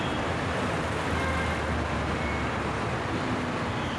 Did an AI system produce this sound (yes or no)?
no